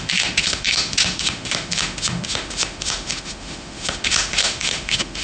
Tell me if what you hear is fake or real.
fake